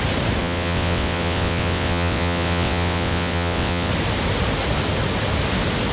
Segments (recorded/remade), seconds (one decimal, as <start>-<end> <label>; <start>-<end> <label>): 0.0-0.4 recorded; 0.4-3.9 remade; 3.9-5.9 recorded